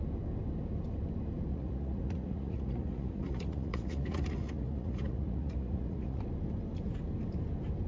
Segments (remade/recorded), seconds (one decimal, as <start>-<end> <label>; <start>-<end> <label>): 0.0-1.5 recorded; 1.5-6.2 remade; 6.2-7.9 recorded